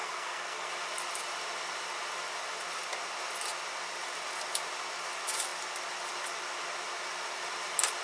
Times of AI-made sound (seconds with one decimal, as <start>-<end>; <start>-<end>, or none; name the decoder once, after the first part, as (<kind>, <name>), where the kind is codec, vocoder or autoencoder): 0.0-0.7 (codec, SNAC)